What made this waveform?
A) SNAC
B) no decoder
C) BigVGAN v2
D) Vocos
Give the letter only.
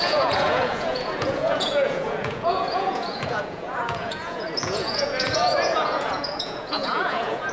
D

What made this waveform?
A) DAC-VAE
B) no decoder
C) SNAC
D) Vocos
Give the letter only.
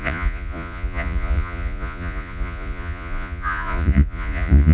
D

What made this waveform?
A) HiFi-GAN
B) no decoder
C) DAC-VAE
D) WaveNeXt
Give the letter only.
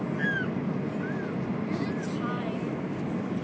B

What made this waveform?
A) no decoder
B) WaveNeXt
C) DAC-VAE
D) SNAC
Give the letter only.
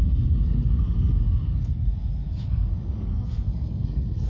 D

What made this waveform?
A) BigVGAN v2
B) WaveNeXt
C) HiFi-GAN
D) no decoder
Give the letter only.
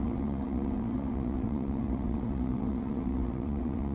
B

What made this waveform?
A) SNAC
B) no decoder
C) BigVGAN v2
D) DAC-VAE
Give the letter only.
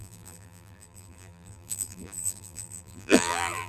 C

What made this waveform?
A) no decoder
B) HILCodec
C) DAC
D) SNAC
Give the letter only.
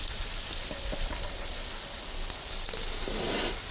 A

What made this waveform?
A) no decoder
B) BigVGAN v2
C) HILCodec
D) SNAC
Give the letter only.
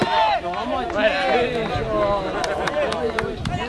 A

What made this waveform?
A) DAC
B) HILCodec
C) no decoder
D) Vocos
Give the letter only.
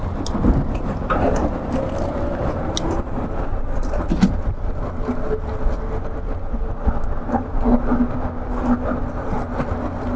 C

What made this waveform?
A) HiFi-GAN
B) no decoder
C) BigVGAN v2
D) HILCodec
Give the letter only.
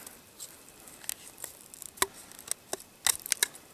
B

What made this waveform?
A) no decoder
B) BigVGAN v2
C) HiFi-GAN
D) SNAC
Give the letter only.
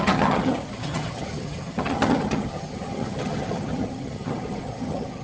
C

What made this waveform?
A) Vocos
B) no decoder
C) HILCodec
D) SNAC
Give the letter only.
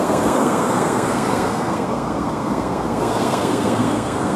D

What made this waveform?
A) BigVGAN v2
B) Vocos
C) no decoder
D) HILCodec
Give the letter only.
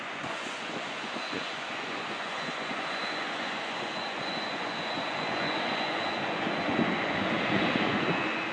B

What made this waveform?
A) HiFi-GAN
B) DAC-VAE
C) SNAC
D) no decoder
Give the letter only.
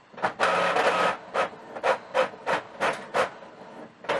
D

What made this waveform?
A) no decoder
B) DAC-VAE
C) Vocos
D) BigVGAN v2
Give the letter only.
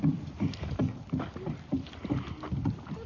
A